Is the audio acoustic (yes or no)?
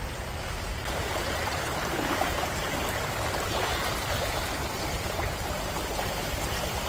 yes